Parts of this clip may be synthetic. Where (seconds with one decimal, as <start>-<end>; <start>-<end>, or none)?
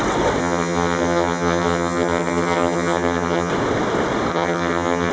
0.4-3.5; 4.3-5.1